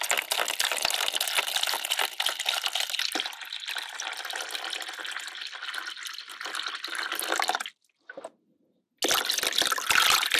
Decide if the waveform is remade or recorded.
recorded